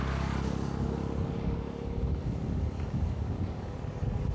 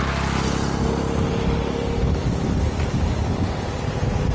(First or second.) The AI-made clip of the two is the first